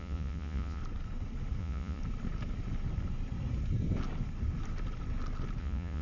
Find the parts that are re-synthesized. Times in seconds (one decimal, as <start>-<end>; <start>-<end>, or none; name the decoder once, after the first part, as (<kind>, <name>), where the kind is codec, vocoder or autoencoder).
0.0-0.8 (vocoder, Vocos); 1.6-2.0; 5.6-6.0